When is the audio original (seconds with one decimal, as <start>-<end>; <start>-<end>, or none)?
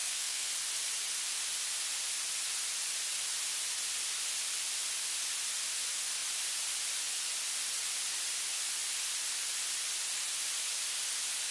0.5-11.5